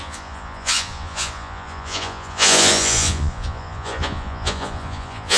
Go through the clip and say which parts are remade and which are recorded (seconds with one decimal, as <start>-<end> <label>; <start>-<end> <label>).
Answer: 0.0-5.4 remade